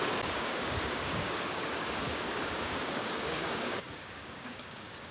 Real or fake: fake